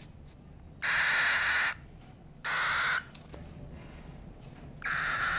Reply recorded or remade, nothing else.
recorded